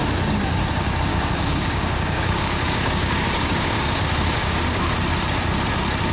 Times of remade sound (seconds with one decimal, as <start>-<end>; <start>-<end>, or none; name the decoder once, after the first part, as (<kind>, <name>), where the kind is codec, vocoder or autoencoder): 1.1-4.8 (codec, DAC)